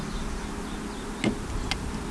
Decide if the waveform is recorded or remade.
recorded